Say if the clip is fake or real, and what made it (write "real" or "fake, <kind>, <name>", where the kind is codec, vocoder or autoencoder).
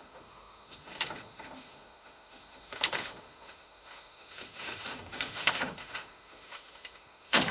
fake, autoencoder, DAC-VAE